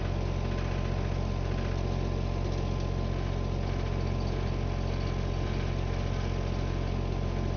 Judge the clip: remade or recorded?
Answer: recorded